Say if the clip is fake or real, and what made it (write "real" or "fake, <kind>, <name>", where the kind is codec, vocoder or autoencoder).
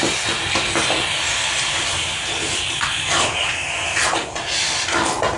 real